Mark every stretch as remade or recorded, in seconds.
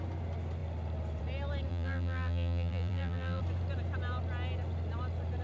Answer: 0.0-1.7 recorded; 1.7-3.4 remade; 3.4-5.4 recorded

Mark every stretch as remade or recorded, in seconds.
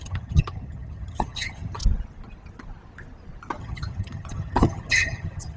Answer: 0.0-1.8 remade; 1.8-3.6 recorded; 3.6-5.6 remade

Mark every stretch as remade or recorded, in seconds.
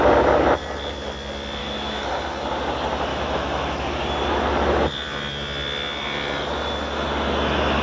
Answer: 0.0-1.6 recorded; 1.6-2.1 remade; 2.1-3.1 recorded; 3.1-3.9 remade; 3.9-7.8 recorded